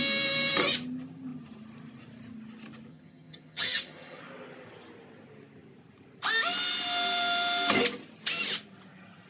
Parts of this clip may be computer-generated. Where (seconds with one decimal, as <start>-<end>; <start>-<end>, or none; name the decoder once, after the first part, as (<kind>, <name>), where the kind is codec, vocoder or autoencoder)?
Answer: 2.9-4.2 (vocoder, HiFi-GAN)